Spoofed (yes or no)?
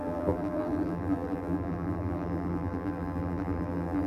yes